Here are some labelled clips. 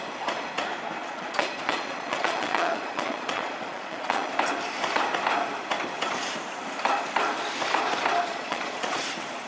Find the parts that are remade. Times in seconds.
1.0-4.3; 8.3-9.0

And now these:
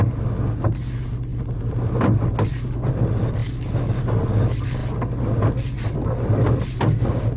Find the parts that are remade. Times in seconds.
none